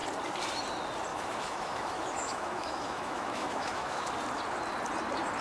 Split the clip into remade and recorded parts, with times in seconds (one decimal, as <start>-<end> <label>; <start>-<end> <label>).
0.0-1.1 recorded; 1.1-4.1 remade; 4.1-5.4 recorded